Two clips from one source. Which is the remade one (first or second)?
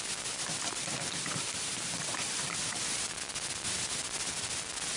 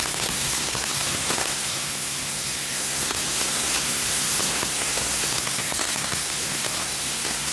second